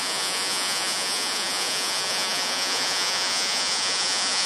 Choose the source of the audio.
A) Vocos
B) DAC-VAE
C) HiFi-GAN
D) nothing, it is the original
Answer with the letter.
A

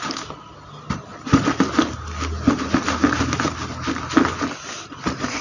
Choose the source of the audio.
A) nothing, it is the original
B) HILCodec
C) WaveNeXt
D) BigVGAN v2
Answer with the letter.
A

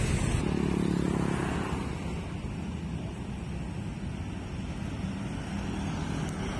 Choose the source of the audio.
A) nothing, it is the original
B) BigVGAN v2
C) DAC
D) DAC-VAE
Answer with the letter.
A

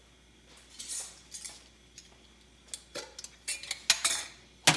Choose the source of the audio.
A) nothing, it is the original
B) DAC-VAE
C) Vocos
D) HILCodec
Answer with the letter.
A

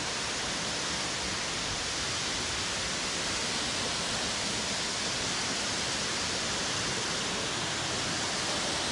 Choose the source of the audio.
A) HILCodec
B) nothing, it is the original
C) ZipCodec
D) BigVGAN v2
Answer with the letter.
B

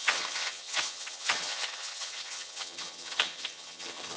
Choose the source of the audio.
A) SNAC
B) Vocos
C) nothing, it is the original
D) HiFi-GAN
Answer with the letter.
D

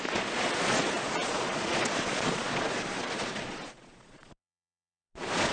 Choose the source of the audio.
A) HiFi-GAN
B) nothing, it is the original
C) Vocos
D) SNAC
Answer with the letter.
C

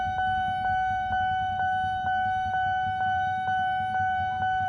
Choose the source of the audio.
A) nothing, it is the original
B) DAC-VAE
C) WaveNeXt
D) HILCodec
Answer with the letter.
B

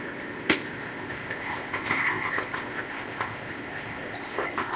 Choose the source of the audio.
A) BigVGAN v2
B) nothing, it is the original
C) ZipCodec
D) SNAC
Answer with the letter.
C